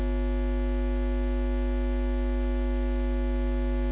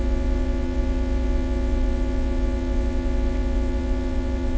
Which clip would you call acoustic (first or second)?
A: first